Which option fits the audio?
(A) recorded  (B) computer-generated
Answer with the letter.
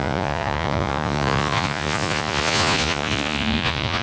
B